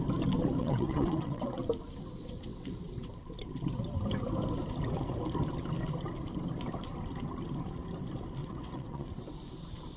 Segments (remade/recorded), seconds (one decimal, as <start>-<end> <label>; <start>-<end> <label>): 0.0-0.6 recorded; 0.6-1.6 remade; 1.6-2.2 recorded; 2.2-3.1 remade; 3.1-8.4 recorded; 8.4-9.3 remade; 9.3-10.0 recorded